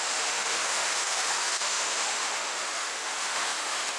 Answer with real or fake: fake